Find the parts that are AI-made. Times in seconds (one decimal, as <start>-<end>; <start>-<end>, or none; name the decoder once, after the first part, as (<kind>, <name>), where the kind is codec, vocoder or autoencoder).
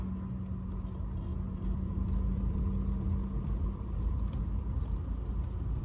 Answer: 1.3-4.8 (vocoder, BigVGAN v2)